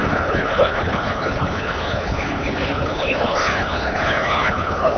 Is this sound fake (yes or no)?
yes